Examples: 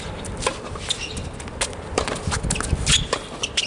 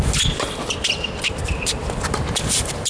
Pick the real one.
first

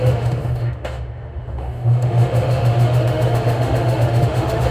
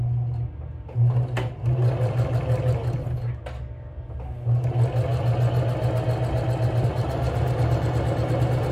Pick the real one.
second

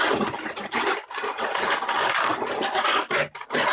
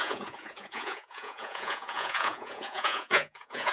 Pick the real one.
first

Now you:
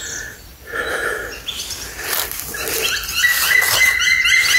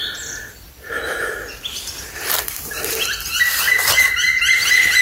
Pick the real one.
first